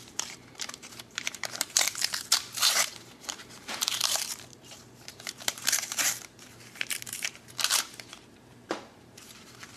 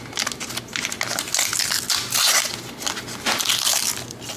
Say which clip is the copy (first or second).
first